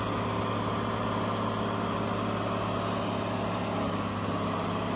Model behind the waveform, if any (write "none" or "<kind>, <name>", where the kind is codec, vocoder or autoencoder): none